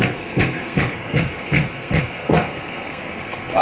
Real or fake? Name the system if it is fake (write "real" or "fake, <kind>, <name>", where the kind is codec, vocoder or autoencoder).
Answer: fake, codec, SNAC